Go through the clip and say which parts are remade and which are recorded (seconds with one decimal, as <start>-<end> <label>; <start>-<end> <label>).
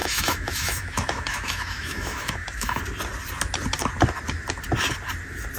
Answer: 0.0-2.8 remade; 2.8-5.6 recorded